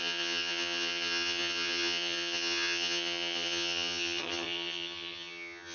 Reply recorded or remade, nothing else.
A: remade